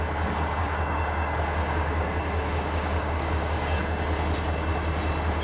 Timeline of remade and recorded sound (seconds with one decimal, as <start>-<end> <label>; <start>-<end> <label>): 0.0-0.6 recorded; 0.6-3.8 remade; 3.8-5.4 recorded